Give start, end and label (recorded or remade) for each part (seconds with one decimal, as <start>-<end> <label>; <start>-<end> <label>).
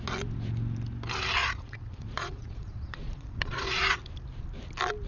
0.0-1.4 recorded; 1.4-4.0 remade; 4.0-5.1 recorded